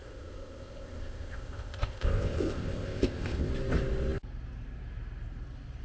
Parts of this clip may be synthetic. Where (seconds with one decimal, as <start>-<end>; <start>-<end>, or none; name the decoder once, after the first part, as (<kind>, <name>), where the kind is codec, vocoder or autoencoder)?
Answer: 0.0-3.5 (codec, ZipCodec)